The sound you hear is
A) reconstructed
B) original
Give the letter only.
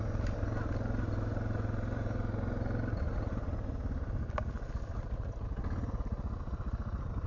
B